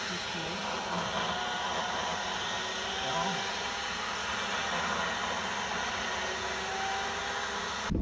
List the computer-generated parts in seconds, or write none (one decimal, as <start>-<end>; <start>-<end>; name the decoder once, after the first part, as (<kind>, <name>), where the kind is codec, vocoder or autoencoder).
none